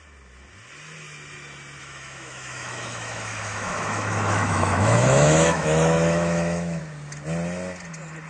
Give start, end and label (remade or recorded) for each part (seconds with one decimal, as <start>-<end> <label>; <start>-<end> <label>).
0.0-1.8 recorded; 1.8-6.8 remade; 6.8-8.3 recorded